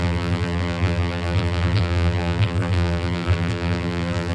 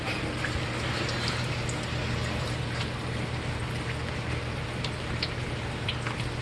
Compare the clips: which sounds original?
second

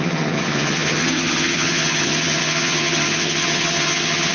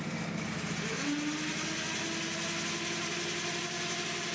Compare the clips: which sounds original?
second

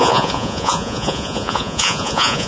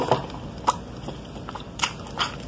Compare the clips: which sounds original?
second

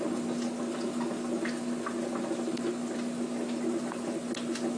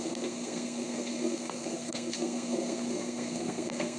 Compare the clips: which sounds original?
first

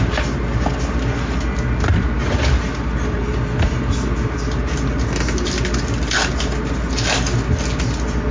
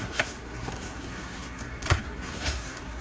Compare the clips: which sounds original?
first